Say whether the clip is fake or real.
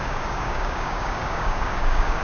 fake